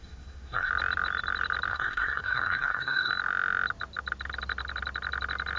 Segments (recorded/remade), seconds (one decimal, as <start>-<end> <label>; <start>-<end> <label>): 0.0-0.7 remade; 0.7-1.7 recorded; 1.7-3.1 remade; 3.1-5.6 recorded

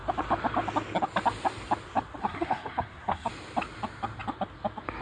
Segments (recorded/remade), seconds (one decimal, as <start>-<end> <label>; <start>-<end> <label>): 0.0-2.2 recorded; 2.2-3.3 remade; 3.3-5.0 recorded